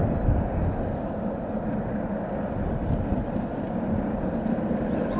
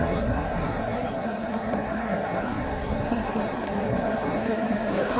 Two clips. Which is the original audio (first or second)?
first